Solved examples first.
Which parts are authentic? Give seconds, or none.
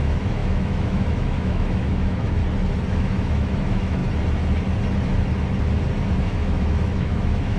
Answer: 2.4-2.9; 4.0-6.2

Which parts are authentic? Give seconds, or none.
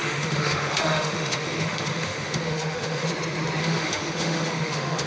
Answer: 3.1-3.6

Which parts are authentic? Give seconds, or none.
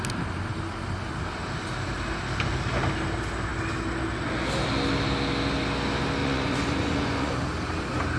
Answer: 0.0-6.2; 7.3-8.2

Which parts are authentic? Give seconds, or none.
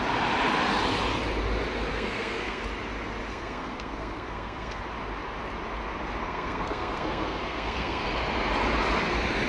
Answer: 0.0-1.9; 2.6-3.3; 4.8-6.2; 8.1-9.5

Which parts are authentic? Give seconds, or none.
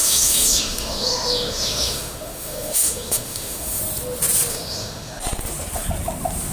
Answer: 3.8-4.5; 5.2-6.5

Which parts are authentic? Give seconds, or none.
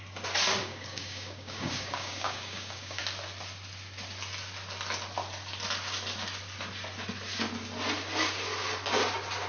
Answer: 0.0-0.6; 3.0-9.5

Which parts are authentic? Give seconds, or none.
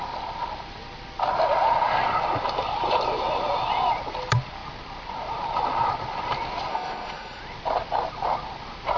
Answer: 0.0-6.7; 7.4-9.0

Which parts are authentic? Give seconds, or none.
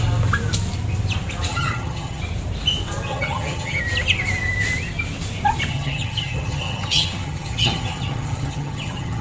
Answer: 0.0-1.5; 2.2-3.1; 3.8-5.7